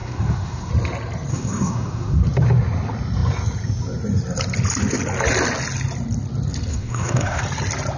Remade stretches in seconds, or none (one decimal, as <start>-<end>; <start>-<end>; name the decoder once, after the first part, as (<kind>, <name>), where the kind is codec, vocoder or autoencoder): 0.0-0.7 (codec, SNAC); 1.3-2.2; 6.7-7.4